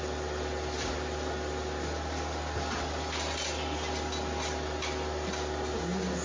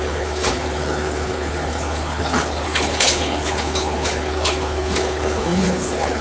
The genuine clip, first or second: first